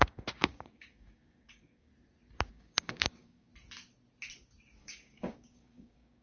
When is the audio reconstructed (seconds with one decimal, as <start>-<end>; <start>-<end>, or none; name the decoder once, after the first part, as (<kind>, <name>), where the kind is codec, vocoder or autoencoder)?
0.0-1.9 (codec, DAC); 2.5-3.5; 4.8-6.2